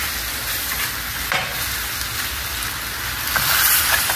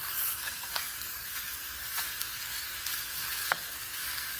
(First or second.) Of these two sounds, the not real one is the second